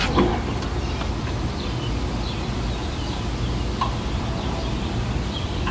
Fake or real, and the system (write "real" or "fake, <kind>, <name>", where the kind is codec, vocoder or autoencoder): real